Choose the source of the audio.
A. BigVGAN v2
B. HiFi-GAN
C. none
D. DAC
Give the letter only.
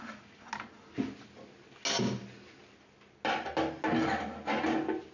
C